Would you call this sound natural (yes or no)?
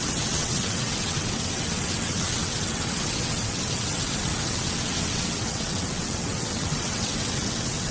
no